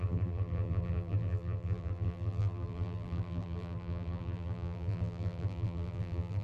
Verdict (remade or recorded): remade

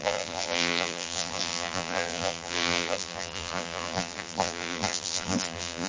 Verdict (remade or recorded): remade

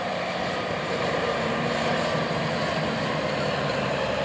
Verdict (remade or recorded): remade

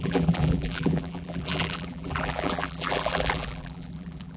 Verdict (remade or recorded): remade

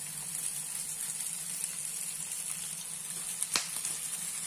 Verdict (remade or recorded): recorded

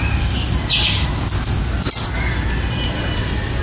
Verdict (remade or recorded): recorded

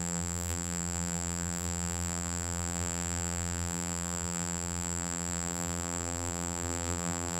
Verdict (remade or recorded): remade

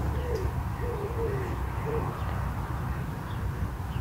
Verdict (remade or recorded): recorded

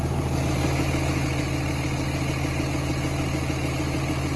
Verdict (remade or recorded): recorded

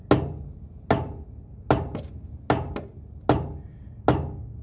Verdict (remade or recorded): recorded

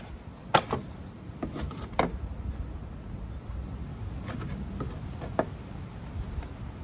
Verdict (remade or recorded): recorded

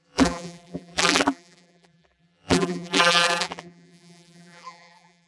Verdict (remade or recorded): remade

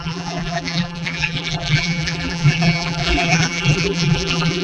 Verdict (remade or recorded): remade